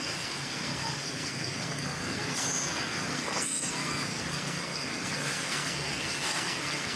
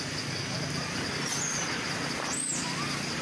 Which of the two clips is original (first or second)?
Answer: second